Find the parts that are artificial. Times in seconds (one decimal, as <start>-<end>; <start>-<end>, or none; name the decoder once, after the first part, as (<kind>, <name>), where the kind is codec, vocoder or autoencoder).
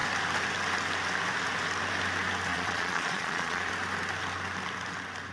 2.5-3.7 (vocoder, Vocos)